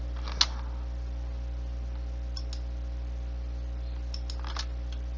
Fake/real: real